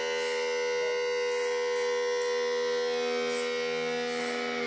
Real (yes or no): yes